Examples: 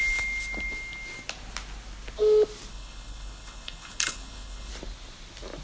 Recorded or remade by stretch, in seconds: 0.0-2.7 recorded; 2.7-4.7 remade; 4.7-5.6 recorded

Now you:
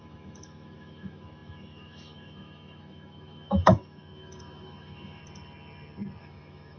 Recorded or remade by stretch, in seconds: 0.0-5.2 remade; 5.2-6.2 recorded; 6.2-6.8 remade

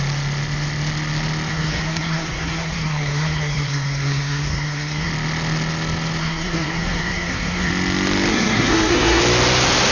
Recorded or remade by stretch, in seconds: 0.0-1.5 recorded; 1.5-5.1 remade; 5.1-6.2 recorded; 6.2-7.7 remade; 7.7-8.3 recorded; 8.3-9.2 remade; 9.2-9.9 recorded

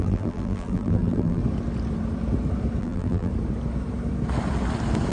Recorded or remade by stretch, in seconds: 0.0-1.4 remade; 1.4-2.8 recorded; 2.8-3.3 remade; 3.3-5.1 recorded

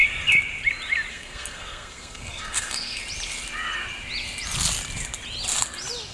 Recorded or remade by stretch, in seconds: 0.0-1.1 recorded; 1.1-3.0 remade; 3.0-6.1 recorded

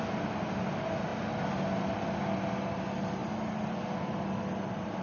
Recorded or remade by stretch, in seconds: 0.0-5.0 recorded

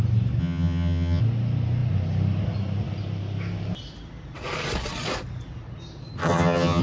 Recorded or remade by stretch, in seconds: 0.0-0.4 recorded; 0.4-1.2 remade; 1.2-6.2 recorded; 6.2-6.8 remade

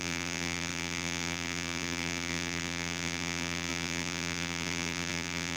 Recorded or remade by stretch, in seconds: 0.0-5.6 remade